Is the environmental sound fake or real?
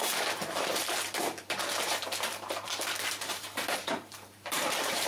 fake